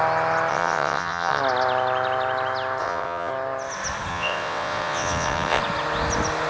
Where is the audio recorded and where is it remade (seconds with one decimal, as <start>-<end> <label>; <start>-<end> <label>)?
0.0-0.5 recorded; 0.5-1.4 remade; 1.4-2.8 recorded; 2.8-3.3 remade; 3.3-4.1 recorded; 4.1-5.6 remade; 5.6-6.5 recorded